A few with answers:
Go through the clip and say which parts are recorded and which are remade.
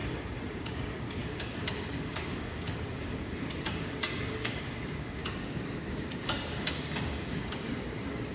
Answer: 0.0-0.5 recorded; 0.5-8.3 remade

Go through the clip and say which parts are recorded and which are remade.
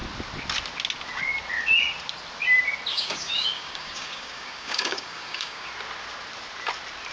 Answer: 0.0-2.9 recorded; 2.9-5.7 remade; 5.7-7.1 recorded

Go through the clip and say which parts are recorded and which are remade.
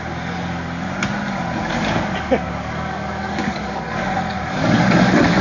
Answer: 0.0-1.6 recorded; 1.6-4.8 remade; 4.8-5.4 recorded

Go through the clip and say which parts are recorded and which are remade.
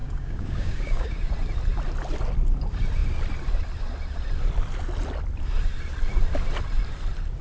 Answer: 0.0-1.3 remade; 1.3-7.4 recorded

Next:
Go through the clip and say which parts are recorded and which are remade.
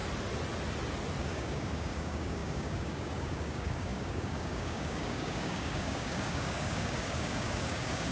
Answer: 0.0-1.2 recorded; 1.2-8.1 remade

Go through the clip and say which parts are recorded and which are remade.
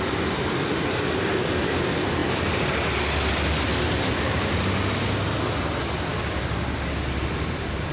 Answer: 0.0-7.9 recorded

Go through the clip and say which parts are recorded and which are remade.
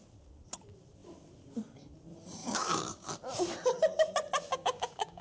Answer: 0.0-2.4 recorded; 2.4-3.1 remade; 3.1-4.5 recorded; 4.5-5.2 remade